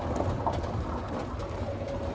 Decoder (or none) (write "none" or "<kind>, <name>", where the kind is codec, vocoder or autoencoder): none